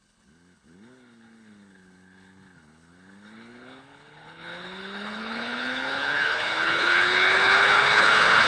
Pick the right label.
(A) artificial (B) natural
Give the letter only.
A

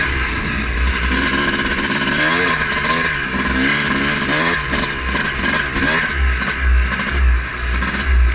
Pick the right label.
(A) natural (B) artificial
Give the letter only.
A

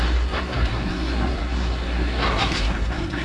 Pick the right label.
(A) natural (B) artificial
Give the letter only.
B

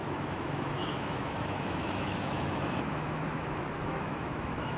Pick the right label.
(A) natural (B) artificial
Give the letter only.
B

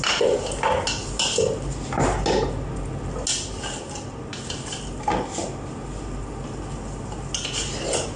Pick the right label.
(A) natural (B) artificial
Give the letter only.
A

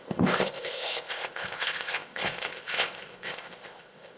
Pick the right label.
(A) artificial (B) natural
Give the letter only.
A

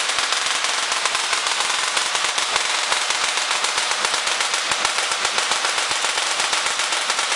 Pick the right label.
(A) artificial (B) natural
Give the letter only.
B